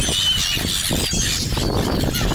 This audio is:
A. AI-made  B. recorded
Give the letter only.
B